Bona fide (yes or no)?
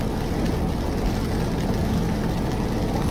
yes